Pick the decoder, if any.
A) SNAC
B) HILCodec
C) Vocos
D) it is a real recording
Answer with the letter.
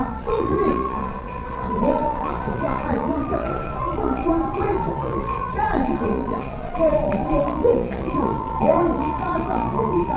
C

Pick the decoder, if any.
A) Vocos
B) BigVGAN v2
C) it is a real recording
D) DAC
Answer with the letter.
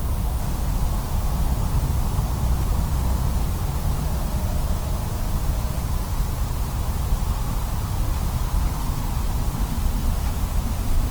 C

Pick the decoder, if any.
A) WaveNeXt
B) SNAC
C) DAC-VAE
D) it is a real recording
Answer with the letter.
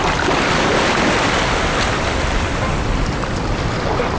D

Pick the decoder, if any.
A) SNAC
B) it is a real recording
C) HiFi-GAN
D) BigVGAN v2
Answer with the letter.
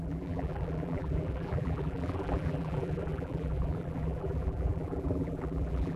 D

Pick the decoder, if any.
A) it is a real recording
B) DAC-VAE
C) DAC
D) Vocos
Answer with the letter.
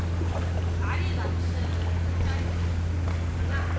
A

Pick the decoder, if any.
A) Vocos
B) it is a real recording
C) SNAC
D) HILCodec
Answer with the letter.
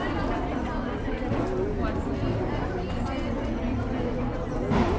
B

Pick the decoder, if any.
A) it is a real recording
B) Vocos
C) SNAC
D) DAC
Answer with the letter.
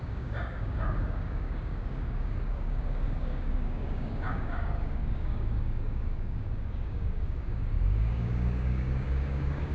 D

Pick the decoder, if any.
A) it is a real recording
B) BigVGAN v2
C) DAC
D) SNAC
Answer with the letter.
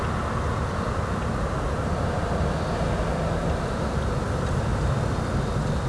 A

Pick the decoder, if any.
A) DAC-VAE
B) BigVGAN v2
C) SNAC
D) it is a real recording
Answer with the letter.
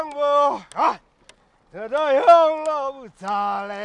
D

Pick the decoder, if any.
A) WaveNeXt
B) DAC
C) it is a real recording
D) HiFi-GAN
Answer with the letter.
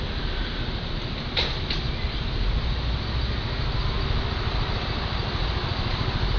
C